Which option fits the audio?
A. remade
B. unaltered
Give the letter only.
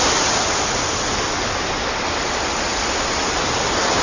B